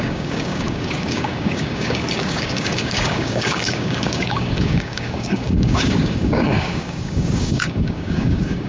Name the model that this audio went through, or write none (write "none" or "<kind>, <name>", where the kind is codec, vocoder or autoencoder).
codec, DAC